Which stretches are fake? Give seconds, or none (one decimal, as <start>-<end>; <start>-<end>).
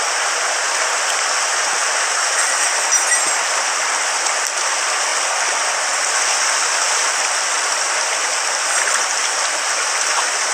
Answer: 1.8-2.6; 7.0-9.2